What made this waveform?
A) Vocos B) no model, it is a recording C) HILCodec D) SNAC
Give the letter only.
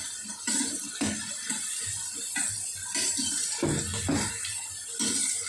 B